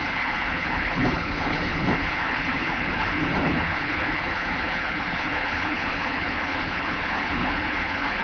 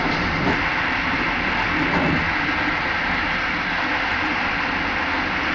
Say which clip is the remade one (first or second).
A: first